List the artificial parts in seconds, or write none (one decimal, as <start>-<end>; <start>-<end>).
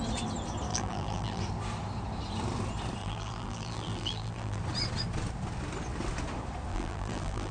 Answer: 0.7-1.4; 3.0-4.6; 6.7-7.5